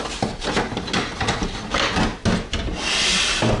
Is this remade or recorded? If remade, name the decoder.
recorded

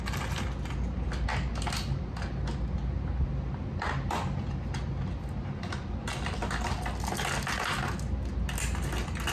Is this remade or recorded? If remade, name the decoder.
recorded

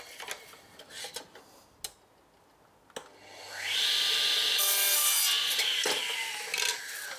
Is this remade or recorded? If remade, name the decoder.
recorded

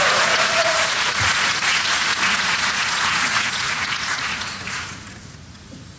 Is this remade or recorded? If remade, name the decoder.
remade, vocoder, Vocos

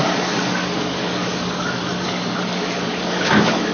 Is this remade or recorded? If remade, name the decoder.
remade, codec, DAC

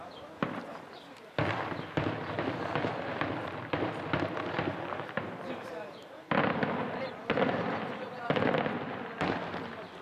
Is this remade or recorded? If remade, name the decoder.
recorded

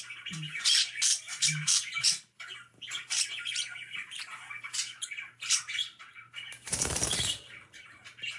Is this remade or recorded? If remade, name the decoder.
remade, vocoder, BigVGAN v2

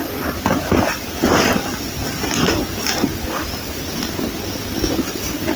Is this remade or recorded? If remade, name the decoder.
recorded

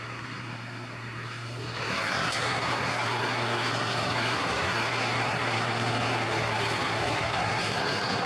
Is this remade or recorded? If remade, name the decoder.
remade, codec, SNAC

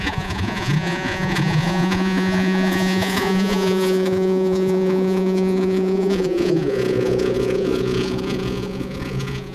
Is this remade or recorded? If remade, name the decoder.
remade, vocoder, Vocos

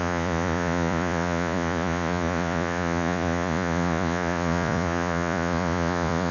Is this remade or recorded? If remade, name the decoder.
remade, vocoder, Vocos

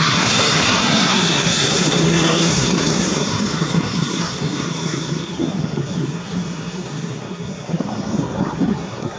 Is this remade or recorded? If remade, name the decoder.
remade, codec, SNAC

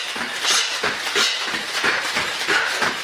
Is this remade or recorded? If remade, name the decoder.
recorded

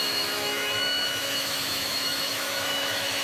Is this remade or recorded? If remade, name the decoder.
remade, autoencoder, DAC-VAE